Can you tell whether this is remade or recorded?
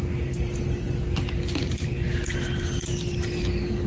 recorded